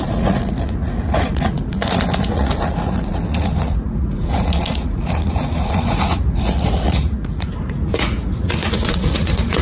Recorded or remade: remade